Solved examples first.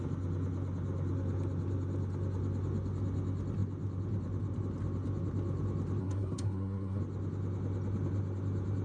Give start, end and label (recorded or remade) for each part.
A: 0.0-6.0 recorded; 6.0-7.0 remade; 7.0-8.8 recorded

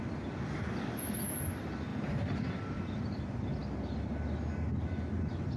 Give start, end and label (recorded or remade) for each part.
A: 0.0-1.9 recorded; 1.9-3.2 remade; 3.2-5.6 recorded

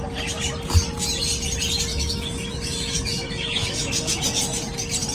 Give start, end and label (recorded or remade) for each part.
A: 0.0-1.9 recorded; 1.9-4.4 remade; 4.4-5.1 recorded

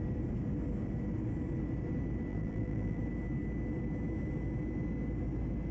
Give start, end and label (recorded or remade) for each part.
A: 0.0-2.3 recorded; 2.3-3.0 remade; 3.0-5.7 recorded

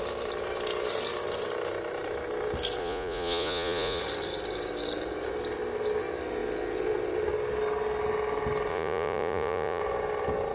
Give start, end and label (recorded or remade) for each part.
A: 0.0-2.8 recorded; 2.8-4.0 remade; 4.0-8.7 recorded; 8.7-9.8 remade; 9.8-10.5 recorded

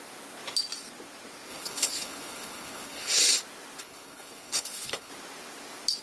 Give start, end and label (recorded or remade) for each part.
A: 0.0-1.5 recorded; 1.5-3.2 remade; 3.2-3.8 recorded; 3.8-5.1 remade; 5.1-6.0 recorded

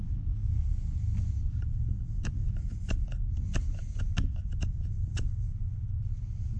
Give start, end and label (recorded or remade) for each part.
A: 0.0-6.6 recorded